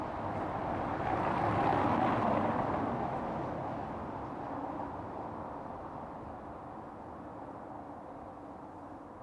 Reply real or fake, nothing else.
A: real